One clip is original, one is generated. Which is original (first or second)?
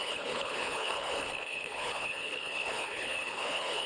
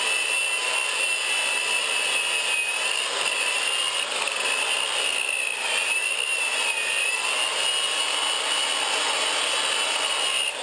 second